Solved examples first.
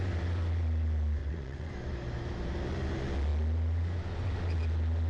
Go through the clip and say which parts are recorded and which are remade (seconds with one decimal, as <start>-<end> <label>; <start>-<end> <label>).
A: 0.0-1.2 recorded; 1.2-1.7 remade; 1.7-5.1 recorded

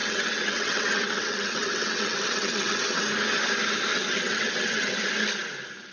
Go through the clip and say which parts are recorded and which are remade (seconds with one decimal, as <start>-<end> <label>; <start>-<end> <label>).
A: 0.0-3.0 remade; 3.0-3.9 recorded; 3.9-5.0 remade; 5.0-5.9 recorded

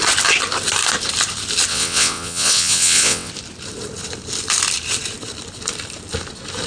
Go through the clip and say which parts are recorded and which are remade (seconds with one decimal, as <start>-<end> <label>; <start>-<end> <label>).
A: 0.0-1.7 recorded; 1.7-3.3 remade; 3.3-6.7 recorded

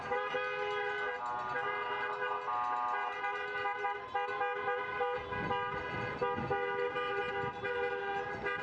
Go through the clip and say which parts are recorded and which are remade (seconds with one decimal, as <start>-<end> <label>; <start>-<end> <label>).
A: 0.0-8.6 recorded

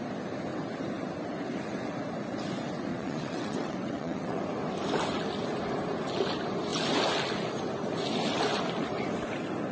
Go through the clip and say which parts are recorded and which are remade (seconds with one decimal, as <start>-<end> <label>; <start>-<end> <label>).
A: 0.0-2.9 recorded; 2.9-4.4 remade; 4.4-9.7 recorded